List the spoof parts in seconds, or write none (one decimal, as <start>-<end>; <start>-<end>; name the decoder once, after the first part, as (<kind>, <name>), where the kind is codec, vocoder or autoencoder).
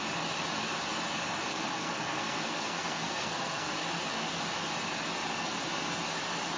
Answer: 1.5-3.7 (codec, SNAC)